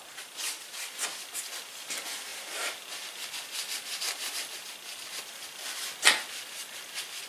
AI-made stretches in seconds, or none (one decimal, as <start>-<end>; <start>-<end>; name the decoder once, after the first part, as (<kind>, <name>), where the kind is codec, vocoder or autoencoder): 2.3-2.8 (vocoder, BigVGAN v2)